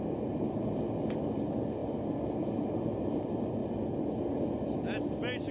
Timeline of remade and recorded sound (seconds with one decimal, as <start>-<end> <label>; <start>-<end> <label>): 0.0-5.5 recorded